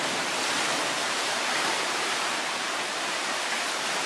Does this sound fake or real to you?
fake